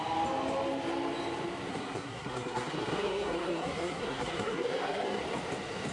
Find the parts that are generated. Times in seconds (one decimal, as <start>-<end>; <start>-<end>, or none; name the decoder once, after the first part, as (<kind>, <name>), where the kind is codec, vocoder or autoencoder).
1.7-5.2 (codec, SNAC)